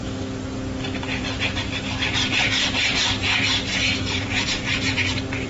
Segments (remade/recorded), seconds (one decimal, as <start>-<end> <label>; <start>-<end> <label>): 0.0-1.2 recorded; 1.2-5.5 remade